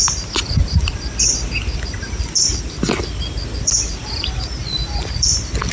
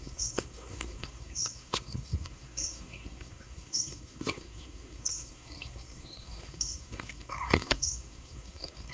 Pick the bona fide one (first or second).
first